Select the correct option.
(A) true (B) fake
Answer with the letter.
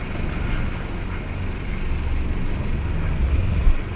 A